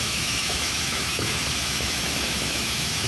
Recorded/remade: remade